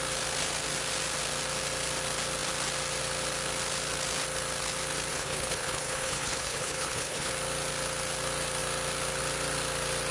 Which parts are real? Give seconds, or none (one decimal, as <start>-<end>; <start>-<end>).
0.0-5.1; 7.3-10.1